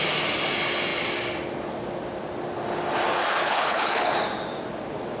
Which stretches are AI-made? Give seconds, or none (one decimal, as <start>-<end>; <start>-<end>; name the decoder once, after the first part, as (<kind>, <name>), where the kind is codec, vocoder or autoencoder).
3.4-4.1 (codec, HILCodec)